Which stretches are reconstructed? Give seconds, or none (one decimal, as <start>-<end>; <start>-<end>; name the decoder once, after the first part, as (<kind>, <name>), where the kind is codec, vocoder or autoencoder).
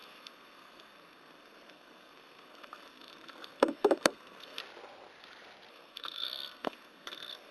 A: 0.0-4.6 (codec, SNAC); 5.7-7.5